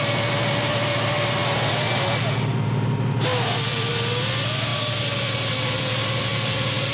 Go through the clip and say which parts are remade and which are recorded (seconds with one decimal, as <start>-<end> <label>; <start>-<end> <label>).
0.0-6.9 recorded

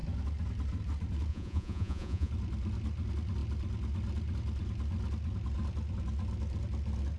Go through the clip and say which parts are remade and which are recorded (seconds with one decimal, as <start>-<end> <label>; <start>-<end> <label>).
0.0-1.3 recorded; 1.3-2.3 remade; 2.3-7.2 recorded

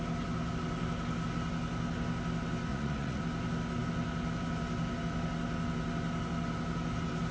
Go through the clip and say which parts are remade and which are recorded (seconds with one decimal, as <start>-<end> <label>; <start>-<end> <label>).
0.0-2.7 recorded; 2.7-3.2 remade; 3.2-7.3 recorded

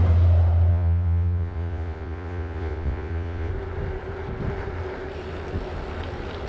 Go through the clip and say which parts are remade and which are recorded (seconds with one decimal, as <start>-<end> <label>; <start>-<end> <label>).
0.0-0.7 recorded; 0.7-3.5 remade; 3.5-6.5 recorded

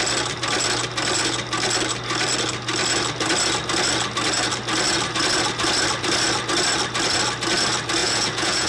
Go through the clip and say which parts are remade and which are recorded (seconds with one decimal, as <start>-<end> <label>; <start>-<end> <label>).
0.0-8.0 recorded; 8.0-8.7 remade

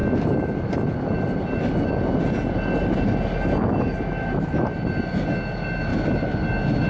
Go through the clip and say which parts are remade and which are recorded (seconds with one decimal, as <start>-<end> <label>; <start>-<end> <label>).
0.0-6.9 recorded